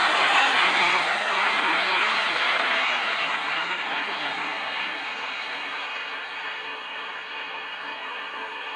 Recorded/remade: remade